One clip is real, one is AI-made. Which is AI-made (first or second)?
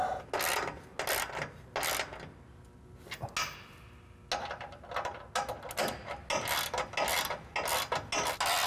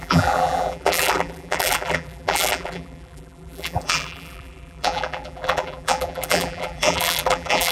second